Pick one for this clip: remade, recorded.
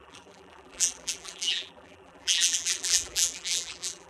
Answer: remade